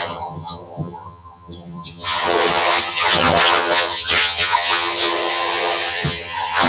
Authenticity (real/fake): fake